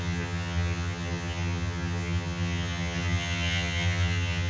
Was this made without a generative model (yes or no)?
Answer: no